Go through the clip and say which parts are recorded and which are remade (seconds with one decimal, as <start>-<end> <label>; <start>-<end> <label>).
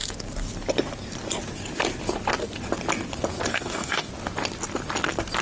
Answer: 0.0-3.5 recorded; 3.5-4.1 remade; 4.1-5.4 recorded